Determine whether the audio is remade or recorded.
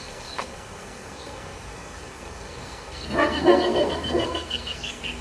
remade